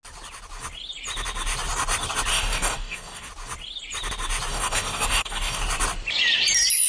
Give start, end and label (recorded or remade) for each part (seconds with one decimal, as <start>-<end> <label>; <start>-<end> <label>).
0.0-2.3 recorded; 2.3-3.3 remade; 3.3-4.5 recorded; 4.5-5.6 remade; 5.6-6.9 recorded